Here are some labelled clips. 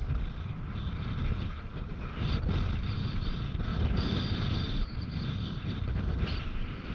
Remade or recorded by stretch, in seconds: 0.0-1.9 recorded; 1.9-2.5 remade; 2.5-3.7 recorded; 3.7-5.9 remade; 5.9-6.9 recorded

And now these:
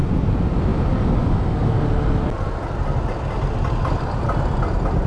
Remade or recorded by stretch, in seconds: 0.0-5.1 recorded